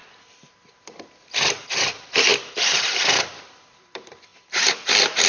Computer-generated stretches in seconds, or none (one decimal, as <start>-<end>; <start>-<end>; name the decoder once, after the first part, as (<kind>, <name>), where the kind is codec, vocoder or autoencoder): 0.0-4.3 (vocoder, BigVGAN v2)